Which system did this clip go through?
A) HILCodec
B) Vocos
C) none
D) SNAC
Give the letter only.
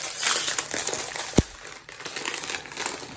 C